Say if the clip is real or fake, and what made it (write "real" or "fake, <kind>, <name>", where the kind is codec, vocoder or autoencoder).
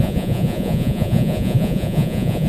fake, vocoder, Vocos